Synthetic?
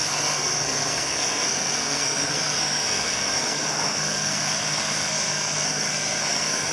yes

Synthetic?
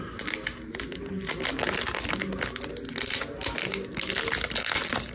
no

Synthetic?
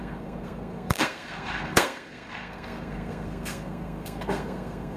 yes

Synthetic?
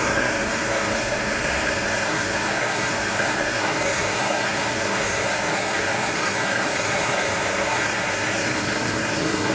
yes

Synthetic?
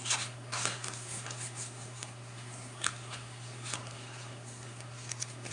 yes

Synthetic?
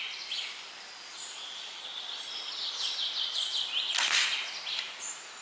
no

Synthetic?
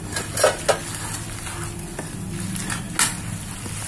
no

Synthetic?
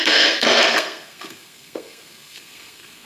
yes